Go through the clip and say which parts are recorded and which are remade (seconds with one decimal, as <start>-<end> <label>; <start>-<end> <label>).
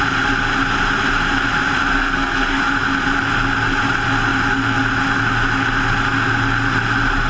0.0-1.9 recorded; 1.9-2.6 remade; 2.6-7.3 recorded